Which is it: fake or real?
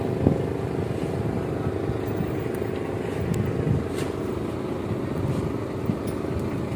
real